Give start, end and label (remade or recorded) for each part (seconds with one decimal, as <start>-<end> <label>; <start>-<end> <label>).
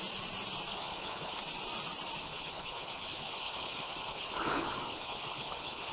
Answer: 0.0-0.7 recorded; 0.7-1.4 remade; 1.4-2.2 recorded; 2.2-5.9 remade